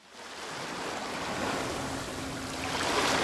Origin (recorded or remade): recorded